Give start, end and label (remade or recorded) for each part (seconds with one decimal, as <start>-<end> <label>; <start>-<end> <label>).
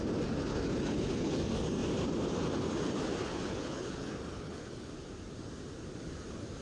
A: 0.0-0.5 recorded; 0.5-1.4 remade; 1.4-3.2 recorded; 3.2-4.9 remade; 4.9-6.6 recorded